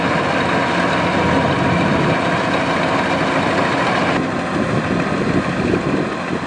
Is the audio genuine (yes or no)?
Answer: yes